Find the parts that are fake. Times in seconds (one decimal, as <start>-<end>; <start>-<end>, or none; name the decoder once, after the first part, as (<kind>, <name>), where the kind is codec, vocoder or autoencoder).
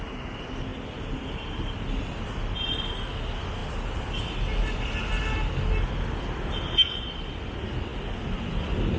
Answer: none